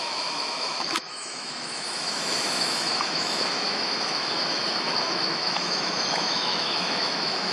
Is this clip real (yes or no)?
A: no